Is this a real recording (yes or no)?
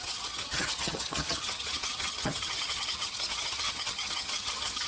no